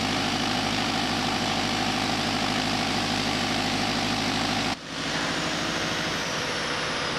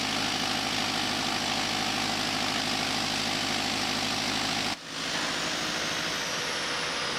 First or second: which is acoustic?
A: second